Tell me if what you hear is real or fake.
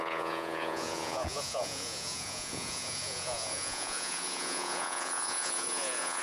fake